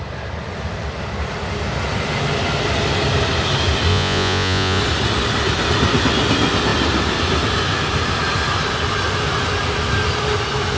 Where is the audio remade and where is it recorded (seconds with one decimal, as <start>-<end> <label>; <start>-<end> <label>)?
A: 0.0-3.9 recorded; 3.9-4.8 remade; 4.8-10.8 recorded